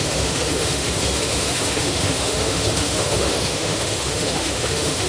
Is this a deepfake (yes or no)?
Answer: yes